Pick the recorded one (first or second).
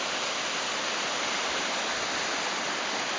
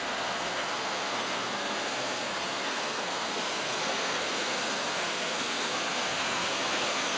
first